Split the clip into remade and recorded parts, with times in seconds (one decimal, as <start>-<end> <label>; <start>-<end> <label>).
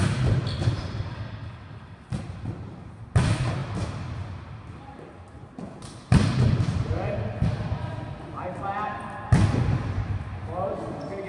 0.0-11.3 recorded